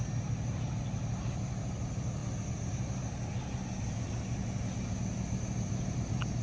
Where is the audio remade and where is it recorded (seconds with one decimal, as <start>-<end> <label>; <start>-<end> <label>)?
0.0-6.4 recorded

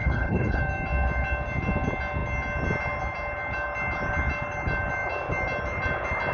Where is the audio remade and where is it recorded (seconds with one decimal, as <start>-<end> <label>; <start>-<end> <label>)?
0.0-0.6 remade; 0.6-6.3 recorded